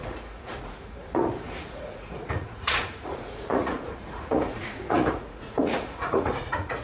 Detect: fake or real fake